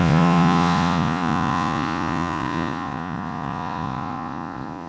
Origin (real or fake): fake